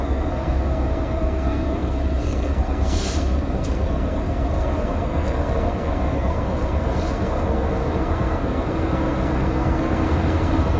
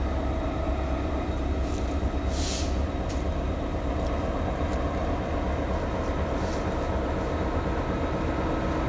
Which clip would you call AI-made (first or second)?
first